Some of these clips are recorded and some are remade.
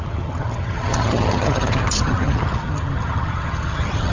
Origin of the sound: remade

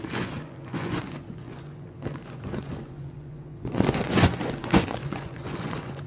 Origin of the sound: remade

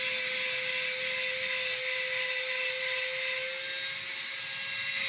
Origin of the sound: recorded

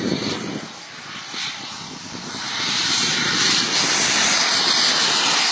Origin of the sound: remade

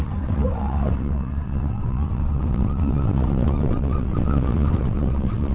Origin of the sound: remade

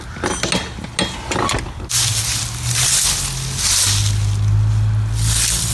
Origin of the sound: recorded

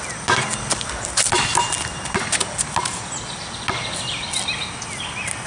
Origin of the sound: recorded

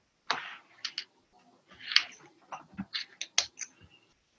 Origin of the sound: recorded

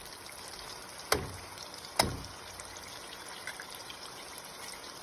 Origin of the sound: recorded